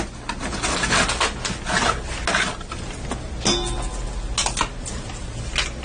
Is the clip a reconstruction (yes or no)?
no